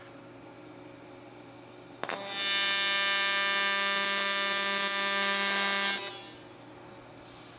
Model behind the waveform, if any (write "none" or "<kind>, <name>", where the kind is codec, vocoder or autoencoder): none